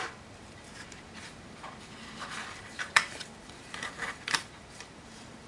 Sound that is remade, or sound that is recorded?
remade